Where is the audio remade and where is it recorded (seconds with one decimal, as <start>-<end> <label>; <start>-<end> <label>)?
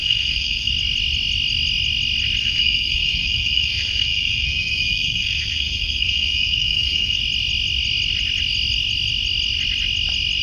0.0-0.7 remade; 0.7-2.4 recorded; 2.4-7.2 remade; 7.2-10.4 recorded